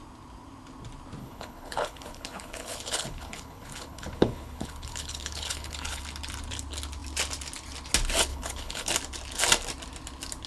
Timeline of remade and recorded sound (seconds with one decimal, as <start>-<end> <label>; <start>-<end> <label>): 0.0-1.2 recorded; 1.2-6.0 remade; 6.0-8.3 recorded; 8.3-8.9 remade; 8.9-10.5 recorded